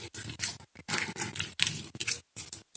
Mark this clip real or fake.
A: real